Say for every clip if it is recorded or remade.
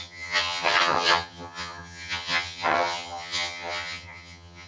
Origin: remade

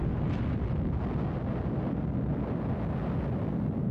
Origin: recorded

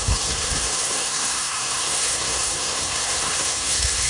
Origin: remade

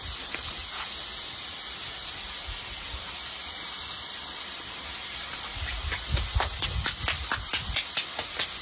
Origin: recorded